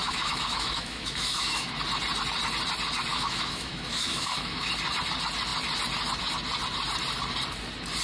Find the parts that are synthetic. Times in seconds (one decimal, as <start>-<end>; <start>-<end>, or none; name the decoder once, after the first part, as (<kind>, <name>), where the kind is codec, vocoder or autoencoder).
0.0-1.7 (autoencoder, DAC-VAE); 3.1-4.7